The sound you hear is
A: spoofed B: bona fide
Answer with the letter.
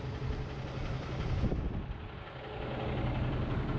B